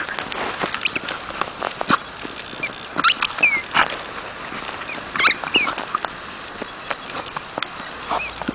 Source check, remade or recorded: recorded